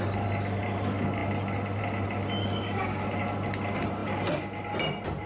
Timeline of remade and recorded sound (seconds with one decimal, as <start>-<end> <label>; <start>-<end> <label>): 0.0-2.4 recorded; 2.4-3.0 remade; 3.0-5.3 recorded